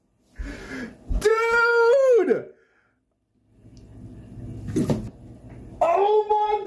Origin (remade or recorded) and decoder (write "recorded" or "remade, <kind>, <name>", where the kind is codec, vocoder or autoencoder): recorded